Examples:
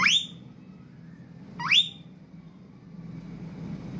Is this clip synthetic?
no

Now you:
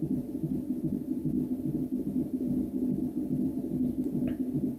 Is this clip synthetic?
no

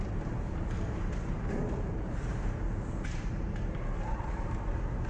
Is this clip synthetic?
yes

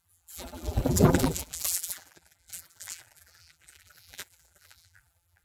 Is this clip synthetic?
yes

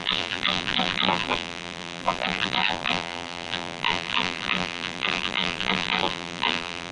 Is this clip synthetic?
yes